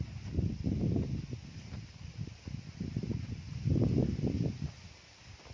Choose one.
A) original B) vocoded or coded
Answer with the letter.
A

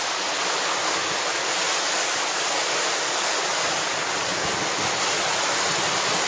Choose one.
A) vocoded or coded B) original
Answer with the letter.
B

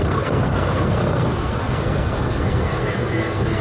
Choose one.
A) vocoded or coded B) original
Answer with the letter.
A